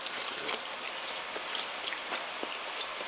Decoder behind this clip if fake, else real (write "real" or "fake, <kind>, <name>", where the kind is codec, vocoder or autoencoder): real